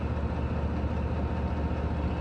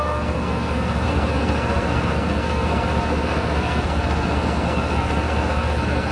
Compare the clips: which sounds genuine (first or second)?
first